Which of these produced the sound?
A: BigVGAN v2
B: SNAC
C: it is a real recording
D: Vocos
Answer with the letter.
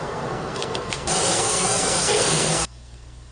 B